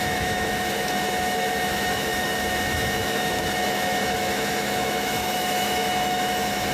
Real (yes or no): no